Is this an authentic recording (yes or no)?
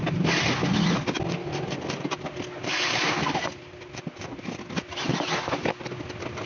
yes